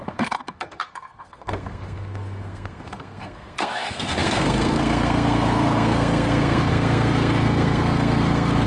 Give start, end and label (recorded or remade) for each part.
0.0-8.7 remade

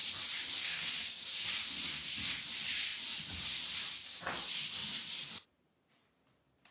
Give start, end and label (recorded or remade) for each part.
0.0-0.6 recorded; 0.6-1.2 remade; 1.2-6.7 recorded

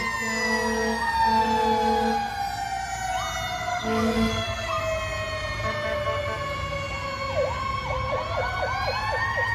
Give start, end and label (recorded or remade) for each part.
0.0-3.7 recorded; 3.7-4.8 remade; 4.8-9.5 recorded

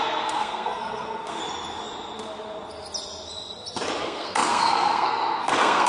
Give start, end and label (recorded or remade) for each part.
0.0-1.4 remade; 1.4-4.0 recorded; 4.0-5.9 remade

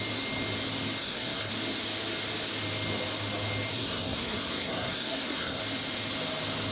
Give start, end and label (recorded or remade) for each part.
0.0-1.0 recorded; 1.0-1.5 remade; 1.5-3.7 recorded; 3.7-5.6 remade; 5.6-6.7 recorded

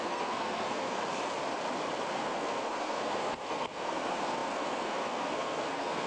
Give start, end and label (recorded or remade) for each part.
0.0-1.0 remade; 1.0-2.1 recorded; 2.1-6.1 remade

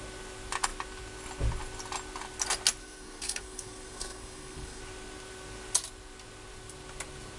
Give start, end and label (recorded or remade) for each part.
0.0-2.8 recorded; 2.8-4.8 remade; 4.8-7.4 recorded

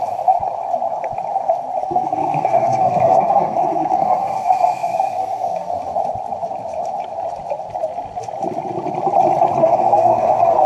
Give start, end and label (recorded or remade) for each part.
0.0-1.8 recorded; 1.8-5.7 remade; 5.7-9.6 recorded; 9.6-10.7 remade